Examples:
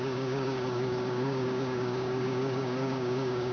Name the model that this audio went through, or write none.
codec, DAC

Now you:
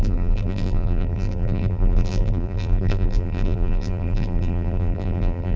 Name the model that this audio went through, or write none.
vocoder, BigVGAN v2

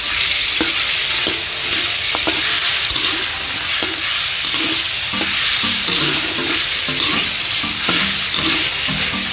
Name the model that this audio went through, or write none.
none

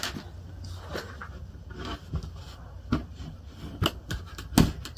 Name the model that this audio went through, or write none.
none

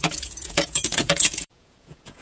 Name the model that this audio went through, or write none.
vocoder, Vocos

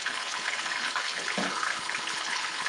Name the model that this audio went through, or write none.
codec, HILCodec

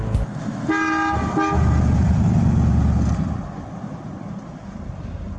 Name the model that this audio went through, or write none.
none